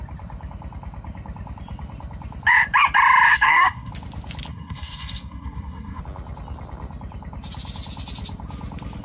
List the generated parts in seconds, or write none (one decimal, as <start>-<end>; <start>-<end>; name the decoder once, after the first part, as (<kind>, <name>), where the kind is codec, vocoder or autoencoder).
3.3-3.9 (codec, SNAC); 4.5-6.0